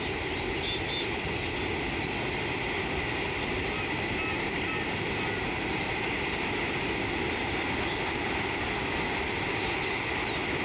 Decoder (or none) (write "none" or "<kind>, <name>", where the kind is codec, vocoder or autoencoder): none